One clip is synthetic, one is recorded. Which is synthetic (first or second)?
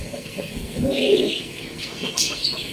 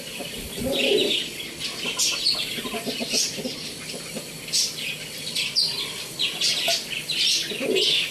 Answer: first